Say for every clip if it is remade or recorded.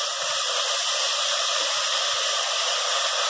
recorded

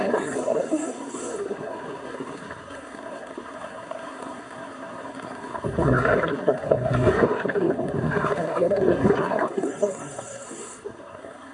remade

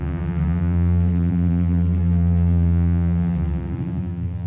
remade